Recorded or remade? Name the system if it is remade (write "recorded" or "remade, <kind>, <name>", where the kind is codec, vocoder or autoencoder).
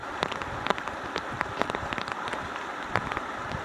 recorded